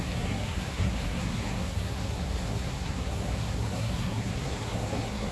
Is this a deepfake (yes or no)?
yes